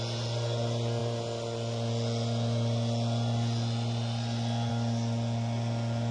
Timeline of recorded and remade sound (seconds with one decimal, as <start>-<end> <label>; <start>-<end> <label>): 0.0-6.1 recorded